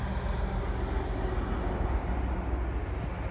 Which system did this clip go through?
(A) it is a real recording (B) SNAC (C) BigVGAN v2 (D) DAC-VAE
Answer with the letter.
A